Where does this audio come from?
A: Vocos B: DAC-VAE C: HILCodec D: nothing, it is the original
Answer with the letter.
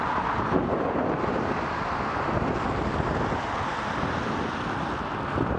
D